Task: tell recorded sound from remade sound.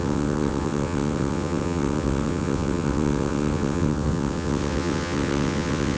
remade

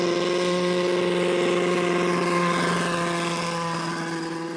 recorded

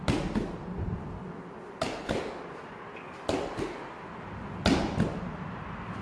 recorded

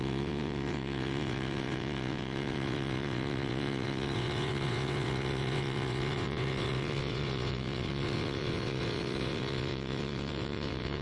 remade